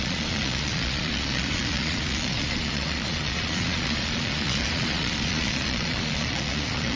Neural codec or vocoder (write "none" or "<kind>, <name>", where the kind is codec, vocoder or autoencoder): vocoder, Vocos